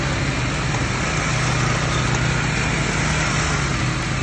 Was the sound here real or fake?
real